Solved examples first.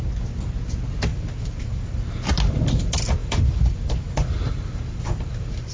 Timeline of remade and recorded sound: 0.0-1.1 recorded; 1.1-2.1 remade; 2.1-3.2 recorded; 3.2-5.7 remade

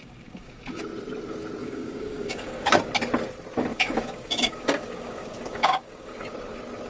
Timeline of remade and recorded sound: 0.0-0.5 remade; 0.5-1.6 recorded; 1.6-2.7 remade; 2.7-3.7 recorded; 3.7-6.3 remade; 6.3-6.9 recorded

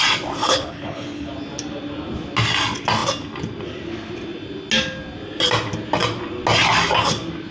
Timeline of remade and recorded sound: 0.0-0.4 recorded; 0.4-1.3 remade; 1.3-7.5 recorded

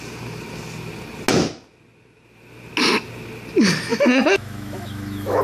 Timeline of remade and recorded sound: 0.0-3.9 recorded; 3.9-5.4 remade

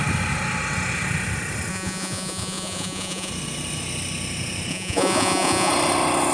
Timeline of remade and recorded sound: 0.0-1.7 recorded; 1.7-3.3 remade; 3.3-4.7 recorded; 4.7-5.7 remade; 5.7-6.3 recorded